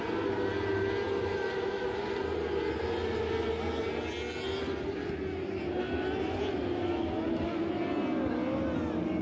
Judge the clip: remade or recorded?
recorded